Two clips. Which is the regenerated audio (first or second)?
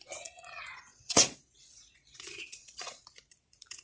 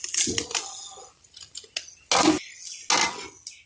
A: first